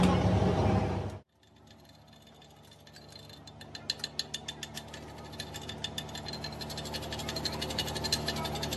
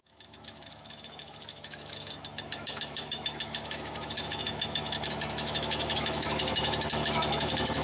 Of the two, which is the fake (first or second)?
second